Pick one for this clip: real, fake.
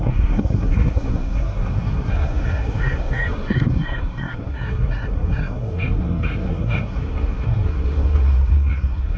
fake